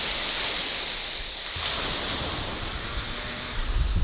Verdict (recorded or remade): recorded